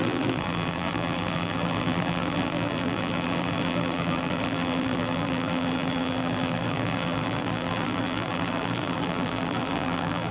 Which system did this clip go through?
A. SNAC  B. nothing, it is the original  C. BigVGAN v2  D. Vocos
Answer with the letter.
C